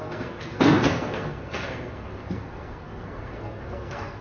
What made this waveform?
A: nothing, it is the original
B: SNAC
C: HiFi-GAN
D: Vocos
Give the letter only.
B